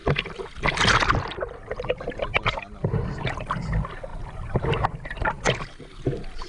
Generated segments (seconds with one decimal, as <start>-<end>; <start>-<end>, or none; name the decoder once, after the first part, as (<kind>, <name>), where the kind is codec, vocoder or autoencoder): 0.0-3.2 (vocoder, BigVGAN v2); 4.1-4.9